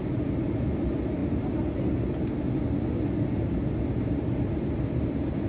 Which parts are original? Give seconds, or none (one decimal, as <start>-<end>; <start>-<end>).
0.0-5.5